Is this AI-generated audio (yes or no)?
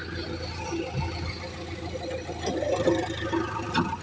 no